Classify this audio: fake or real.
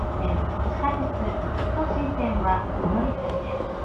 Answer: real